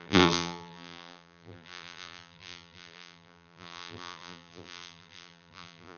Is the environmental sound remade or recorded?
remade